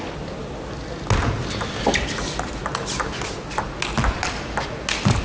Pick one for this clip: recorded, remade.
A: recorded